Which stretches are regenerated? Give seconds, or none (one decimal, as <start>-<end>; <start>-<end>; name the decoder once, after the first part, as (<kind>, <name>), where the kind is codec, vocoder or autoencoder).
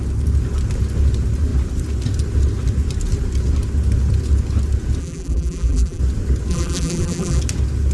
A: 5.0-6.0 (vocoder, BigVGAN v2); 6.5-7.4